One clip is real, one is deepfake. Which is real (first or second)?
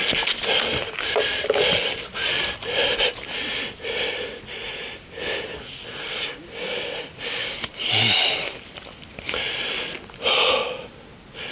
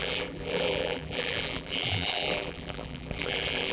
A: first